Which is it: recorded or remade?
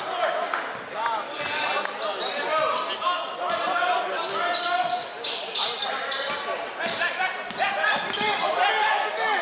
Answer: recorded